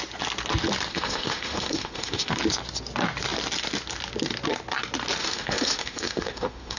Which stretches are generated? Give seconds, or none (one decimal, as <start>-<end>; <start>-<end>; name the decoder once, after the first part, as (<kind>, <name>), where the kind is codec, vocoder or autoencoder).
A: 0.9-2.3 (autoencoder, DAC-VAE); 5.2-6.8